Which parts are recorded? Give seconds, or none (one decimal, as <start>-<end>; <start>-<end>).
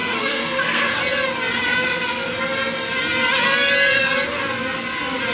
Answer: 0.8-5.3